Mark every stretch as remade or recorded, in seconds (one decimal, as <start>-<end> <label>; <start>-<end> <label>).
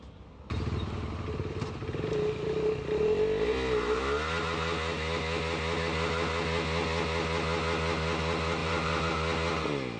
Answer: 0.0-1.8 recorded; 1.8-2.5 remade; 2.5-8.6 recorded; 8.6-9.1 remade; 9.1-10.0 recorded